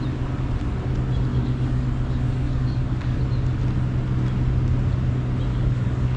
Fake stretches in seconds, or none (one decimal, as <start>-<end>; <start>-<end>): 1.3-3.2; 5.5-6.2